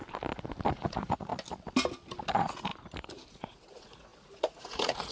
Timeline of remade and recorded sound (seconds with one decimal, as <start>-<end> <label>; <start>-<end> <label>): 0.0-0.7 recorded; 0.7-1.3 remade; 1.3-2.3 recorded; 2.3-2.7 remade; 2.7-3.3 recorded; 3.3-5.1 remade